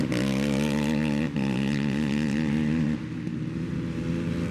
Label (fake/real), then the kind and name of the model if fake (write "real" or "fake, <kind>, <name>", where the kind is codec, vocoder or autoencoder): real